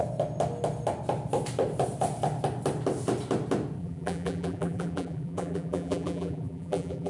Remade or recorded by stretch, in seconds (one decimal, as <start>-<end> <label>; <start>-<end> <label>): 0.0-3.8 recorded; 3.8-7.1 remade